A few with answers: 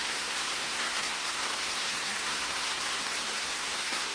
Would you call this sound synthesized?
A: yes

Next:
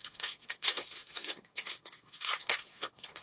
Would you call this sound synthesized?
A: yes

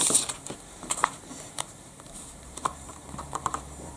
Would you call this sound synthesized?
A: yes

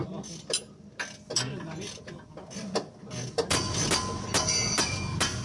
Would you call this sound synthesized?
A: no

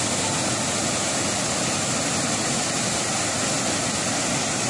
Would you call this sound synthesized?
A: no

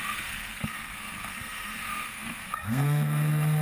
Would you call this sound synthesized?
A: yes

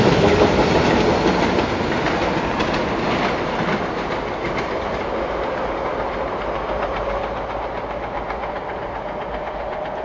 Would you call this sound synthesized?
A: no